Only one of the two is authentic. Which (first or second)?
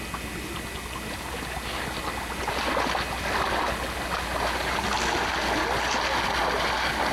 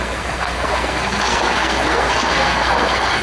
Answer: first